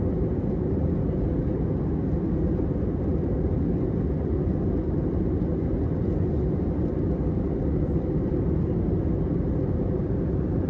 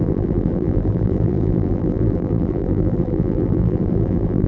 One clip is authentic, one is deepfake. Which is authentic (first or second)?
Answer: first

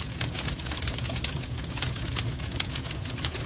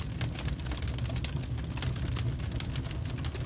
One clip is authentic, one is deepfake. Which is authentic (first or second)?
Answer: second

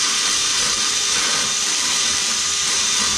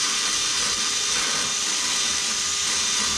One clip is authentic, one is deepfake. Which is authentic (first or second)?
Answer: second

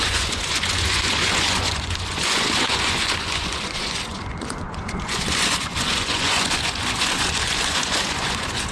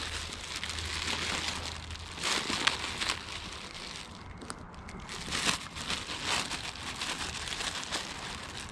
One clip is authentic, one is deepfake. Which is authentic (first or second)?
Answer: second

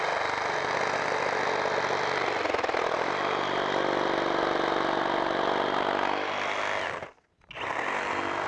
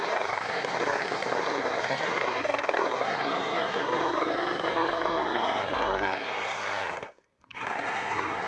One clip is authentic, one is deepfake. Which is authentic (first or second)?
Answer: first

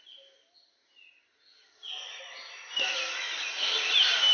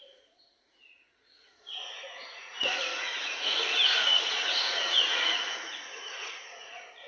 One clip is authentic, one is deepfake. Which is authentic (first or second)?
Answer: first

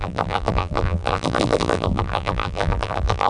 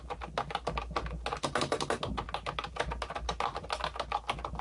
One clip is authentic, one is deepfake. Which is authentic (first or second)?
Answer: second